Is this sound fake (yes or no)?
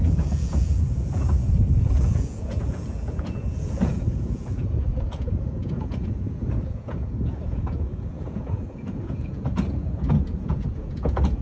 yes